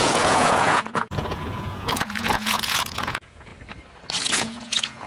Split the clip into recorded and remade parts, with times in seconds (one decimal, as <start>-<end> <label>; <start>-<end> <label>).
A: 0.0-3.5 remade; 3.5-4.2 recorded; 4.2-5.1 remade